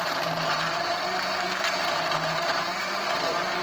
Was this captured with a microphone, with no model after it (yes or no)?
no